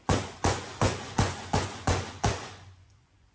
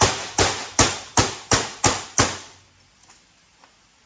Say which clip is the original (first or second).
second